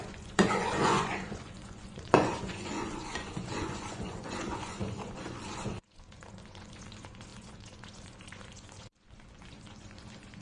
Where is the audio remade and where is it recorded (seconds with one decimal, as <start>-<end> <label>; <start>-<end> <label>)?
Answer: 0.0-10.4 remade